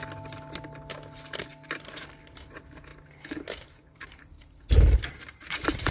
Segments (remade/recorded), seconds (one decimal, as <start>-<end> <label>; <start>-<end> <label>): 0.0-1.5 recorded; 1.5-2.5 remade; 2.5-2.9 recorded; 2.9-5.9 remade